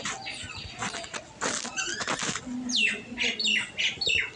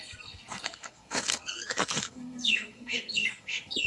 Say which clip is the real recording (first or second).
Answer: first